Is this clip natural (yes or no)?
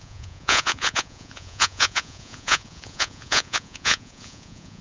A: no